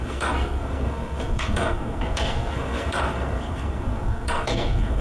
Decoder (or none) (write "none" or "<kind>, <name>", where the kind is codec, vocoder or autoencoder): codec, SNAC